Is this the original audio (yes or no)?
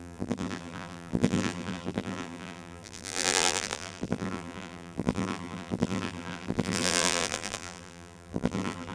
no